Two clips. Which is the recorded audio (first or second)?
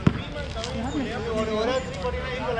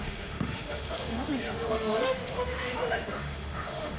first